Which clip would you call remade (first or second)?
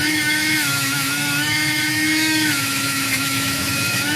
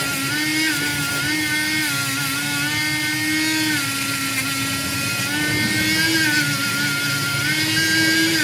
first